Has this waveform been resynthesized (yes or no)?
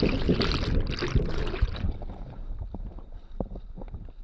no